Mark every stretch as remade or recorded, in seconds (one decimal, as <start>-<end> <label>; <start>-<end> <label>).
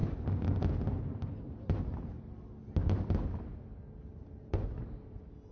0.0-5.5 recorded